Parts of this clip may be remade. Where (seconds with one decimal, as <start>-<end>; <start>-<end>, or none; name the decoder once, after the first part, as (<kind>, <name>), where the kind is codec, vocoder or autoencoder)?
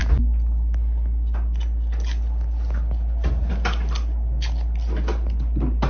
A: none